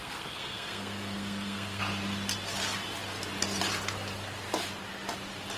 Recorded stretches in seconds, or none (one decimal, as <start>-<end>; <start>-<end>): 1.8-5.6